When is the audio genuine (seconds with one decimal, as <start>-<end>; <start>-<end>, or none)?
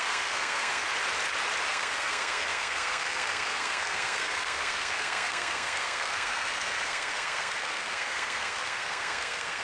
0.9-1.7